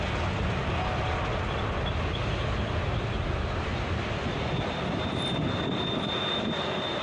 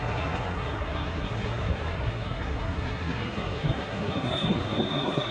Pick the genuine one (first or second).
first